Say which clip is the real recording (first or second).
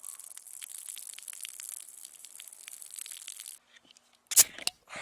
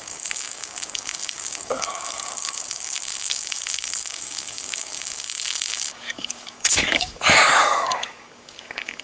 first